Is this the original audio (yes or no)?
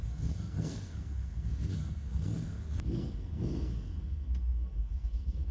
no